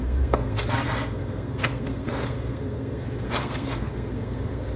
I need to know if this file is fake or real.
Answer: fake